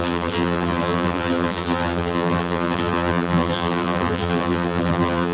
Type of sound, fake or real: fake